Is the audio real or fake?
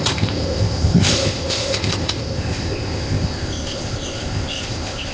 fake